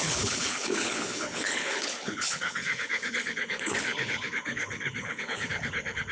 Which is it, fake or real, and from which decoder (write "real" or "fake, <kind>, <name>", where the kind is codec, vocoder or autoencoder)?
fake, codec, HILCodec